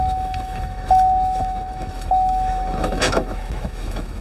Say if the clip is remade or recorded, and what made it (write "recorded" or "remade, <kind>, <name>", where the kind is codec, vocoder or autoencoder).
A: remade, autoencoder, DAC-VAE